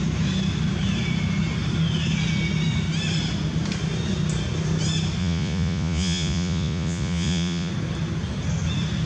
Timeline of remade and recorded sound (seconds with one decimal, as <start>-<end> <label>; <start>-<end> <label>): 0.0-5.2 recorded; 5.2-7.7 remade; 7.7-9.1 recorded